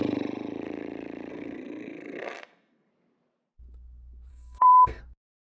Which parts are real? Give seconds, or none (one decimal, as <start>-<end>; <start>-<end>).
0.0-1.3; 2.9-4.3; 5.0-5.5